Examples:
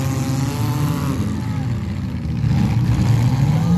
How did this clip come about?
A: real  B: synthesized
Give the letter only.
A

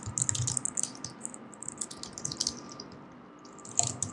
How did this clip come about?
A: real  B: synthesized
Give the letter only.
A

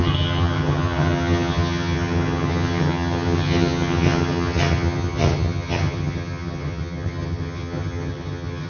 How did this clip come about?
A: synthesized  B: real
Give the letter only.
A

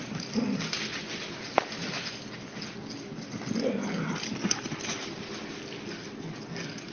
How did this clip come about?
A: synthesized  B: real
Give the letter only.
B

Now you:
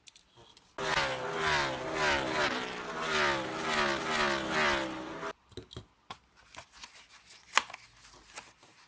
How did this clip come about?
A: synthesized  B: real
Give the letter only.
B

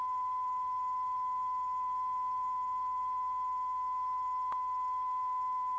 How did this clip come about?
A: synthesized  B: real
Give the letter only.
A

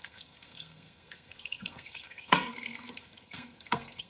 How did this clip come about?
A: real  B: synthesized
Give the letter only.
B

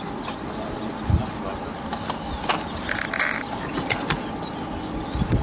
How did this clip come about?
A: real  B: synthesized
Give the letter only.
A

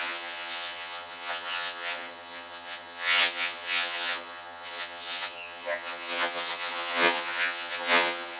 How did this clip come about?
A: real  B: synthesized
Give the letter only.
B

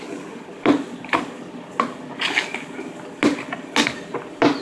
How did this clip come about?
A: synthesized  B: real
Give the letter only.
B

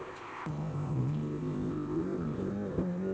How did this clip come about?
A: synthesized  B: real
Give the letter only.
A